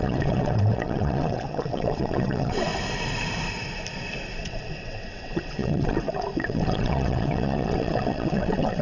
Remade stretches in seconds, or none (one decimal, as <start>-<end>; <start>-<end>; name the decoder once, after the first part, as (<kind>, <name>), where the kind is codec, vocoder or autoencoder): 0.0-2.7 (vocoder, WaveNeXt); 4.4-8.8